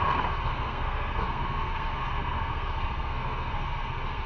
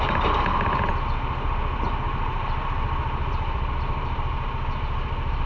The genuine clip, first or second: second